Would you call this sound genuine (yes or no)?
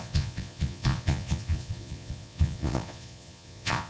no